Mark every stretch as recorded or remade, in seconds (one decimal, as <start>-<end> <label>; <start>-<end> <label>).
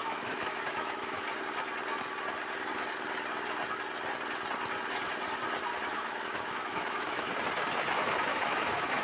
0.0-1.3 remade; 1.3-5.9 recorded; 5.9-7.3 remade; 7.3-8.3 recorded; 8.3-9.0 remade